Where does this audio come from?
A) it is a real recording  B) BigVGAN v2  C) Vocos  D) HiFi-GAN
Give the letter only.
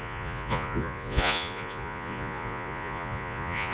C